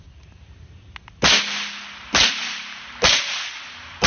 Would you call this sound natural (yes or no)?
yes